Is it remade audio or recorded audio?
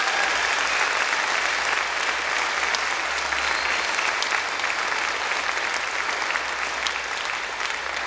recorded